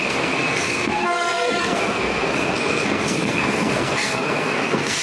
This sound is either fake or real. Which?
fake